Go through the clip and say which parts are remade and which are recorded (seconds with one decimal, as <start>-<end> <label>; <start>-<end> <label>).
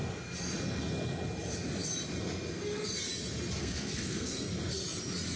0.0-3.6 recorded; 3.6-4.5 remade; 4.5-5.4 recorded